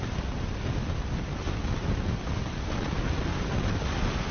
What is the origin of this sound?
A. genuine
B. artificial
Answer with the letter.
A